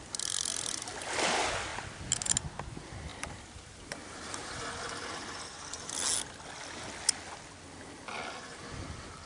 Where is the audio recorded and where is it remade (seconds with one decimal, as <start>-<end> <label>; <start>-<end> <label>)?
0.0-3.1 recorded; 3.1-4.7 remade; 4.7-9.3 recorded